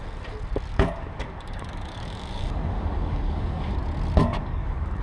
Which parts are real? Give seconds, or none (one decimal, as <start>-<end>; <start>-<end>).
0.0-0.7; 3.7-4.2

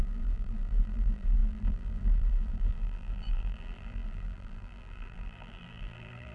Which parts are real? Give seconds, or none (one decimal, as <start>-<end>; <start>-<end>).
none